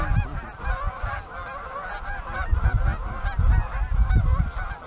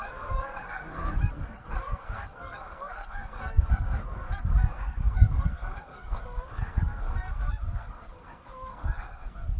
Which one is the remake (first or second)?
second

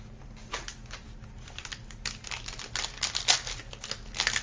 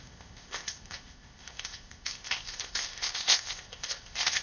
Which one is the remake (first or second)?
second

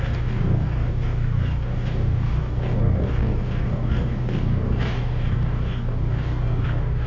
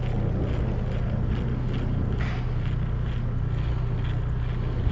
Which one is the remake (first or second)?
first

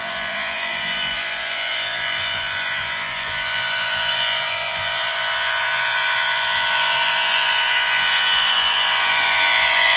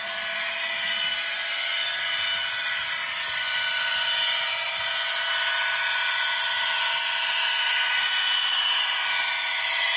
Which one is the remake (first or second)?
first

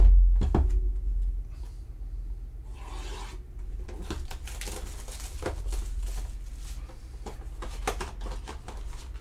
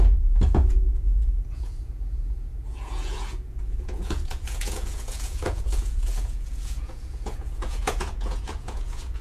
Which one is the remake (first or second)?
second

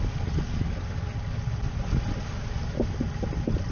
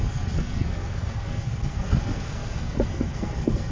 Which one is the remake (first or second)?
second